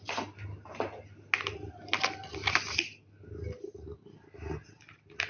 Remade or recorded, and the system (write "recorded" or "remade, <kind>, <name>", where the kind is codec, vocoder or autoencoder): recorded